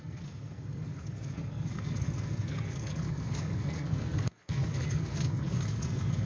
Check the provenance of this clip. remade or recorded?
remade